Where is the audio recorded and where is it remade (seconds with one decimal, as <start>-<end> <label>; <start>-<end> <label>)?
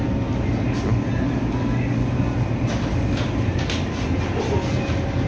0.0-5.3 recorded